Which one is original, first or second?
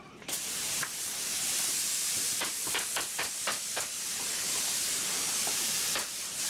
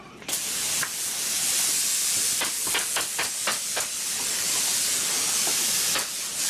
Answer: second